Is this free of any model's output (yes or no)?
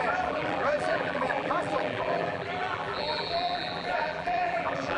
no